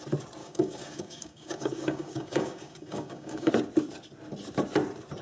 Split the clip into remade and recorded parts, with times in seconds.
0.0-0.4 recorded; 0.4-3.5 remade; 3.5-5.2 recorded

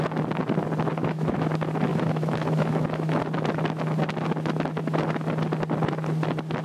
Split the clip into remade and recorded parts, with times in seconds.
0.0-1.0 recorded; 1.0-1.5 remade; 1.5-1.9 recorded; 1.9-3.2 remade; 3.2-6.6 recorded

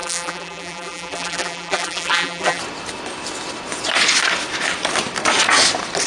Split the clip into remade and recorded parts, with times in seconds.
0.0-2.6 remade; 2.6-6.1 recorded

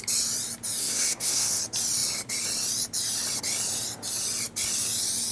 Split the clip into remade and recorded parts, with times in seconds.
0.0-0.8 recorded; 0.8-1.6 remade; 1.6-5.3 recorded

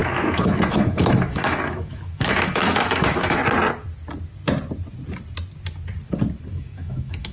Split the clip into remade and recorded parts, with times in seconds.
0.0-3.4 remade; 3.4-6.5 recorded; 6.5-7.3 remade

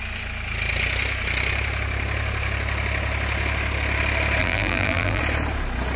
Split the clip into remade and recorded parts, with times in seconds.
0.0-4.4 recorded; 4.4-5.2 remade; 5.2-6.0 recorded

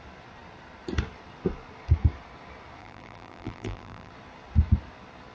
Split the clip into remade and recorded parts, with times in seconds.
0.0-2.8 recorded; 2.8-4.1 remade; 4.1-5.3 recorded

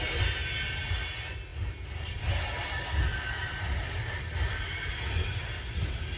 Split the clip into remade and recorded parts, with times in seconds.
0.0-3.1 recorded; 3.1-4.9 remade; 4.9-6.2 recorded